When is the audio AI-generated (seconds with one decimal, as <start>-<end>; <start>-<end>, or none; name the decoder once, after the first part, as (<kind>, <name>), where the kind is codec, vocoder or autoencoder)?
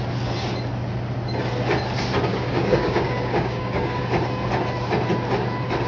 2.3-4.0 (codec, DAC)